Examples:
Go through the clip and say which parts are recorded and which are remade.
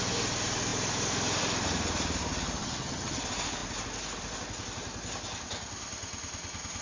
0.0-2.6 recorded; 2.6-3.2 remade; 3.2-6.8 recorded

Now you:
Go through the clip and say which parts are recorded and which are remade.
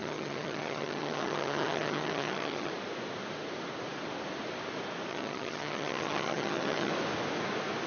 0.0-2.7 remade; 2.7-5.1 recorded; 5.1-6.9 remade; 6.9-7.9 recorded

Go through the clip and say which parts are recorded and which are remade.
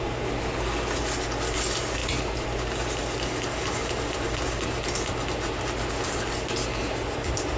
0.0-7.6 recorded